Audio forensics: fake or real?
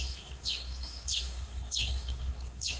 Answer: fake